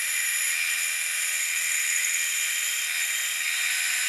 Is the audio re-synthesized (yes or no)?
no